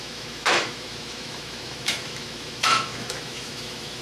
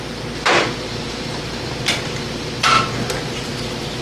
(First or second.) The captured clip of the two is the second